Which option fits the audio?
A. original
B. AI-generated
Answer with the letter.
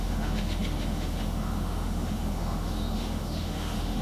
B